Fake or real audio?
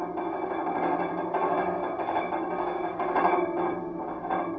fake